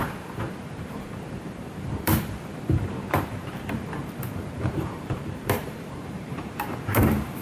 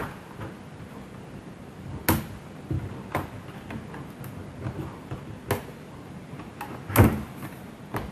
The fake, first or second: first